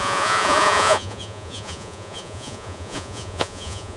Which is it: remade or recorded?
remade